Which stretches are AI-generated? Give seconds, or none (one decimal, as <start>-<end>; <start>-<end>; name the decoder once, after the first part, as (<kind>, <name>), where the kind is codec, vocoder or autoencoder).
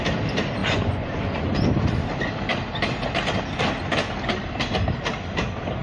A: 0.6-1.5 (vocoder, Vocos)